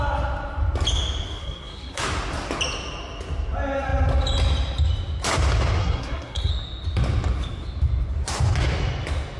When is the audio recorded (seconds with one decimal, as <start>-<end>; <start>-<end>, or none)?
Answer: 0.0-1.4; 2.0-5.8; 6.5-9.4